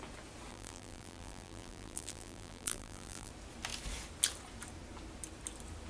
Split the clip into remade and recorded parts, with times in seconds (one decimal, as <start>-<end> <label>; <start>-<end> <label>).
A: 0.0-0.5 recorded; 0.5-3.3 remade; 3.3-5.9 recorded